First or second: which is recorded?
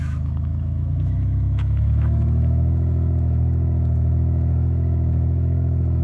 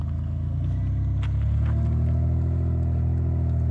second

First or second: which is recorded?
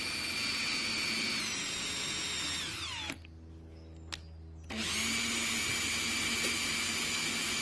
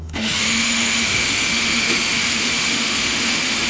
first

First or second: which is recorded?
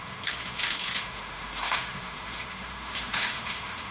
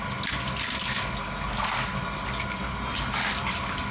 second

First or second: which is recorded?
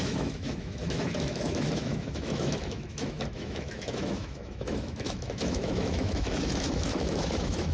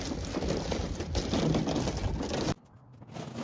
second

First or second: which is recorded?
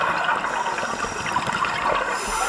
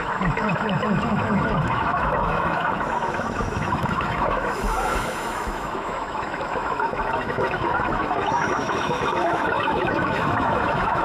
first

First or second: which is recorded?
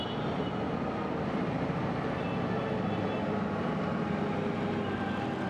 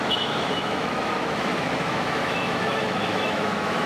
first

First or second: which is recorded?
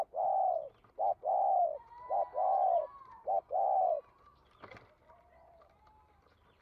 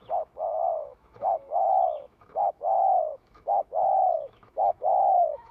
first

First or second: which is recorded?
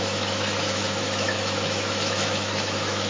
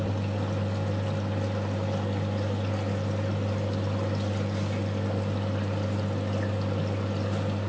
second